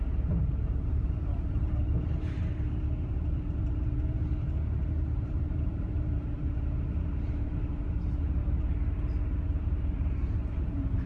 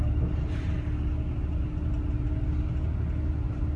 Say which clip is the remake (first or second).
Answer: first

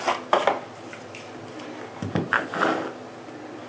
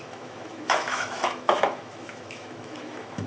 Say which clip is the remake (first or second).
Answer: second